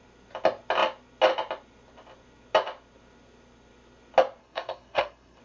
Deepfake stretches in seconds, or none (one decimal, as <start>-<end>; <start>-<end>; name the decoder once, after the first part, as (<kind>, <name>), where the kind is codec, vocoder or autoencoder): 4.4-5.4 (codec, SNAC)